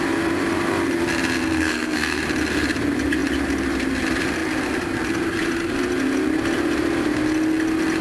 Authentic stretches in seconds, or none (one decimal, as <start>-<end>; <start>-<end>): 0.0-1.5; 2.2-8.0